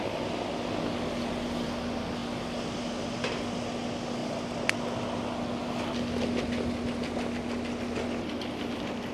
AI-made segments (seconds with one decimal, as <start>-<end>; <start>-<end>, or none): none